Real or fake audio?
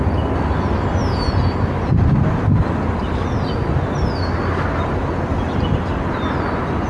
real